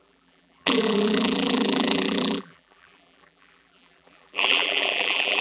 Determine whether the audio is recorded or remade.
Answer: remade